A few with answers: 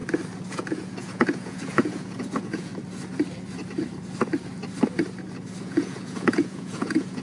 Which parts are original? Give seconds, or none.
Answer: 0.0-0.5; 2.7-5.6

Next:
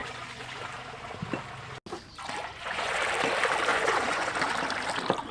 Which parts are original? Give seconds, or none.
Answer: 0.6-2.4; 3.0-3.7; 4.3-5.3

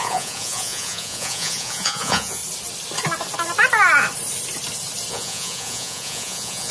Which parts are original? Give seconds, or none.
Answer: 2.4-5.1

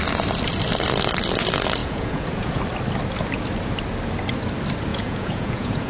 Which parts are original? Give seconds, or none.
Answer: 0.0-1.8; 2.6-4.9